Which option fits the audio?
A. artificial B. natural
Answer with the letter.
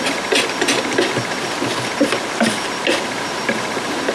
B